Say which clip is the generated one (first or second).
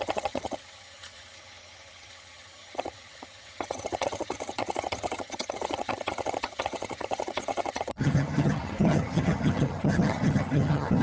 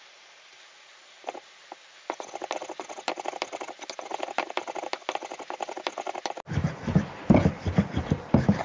first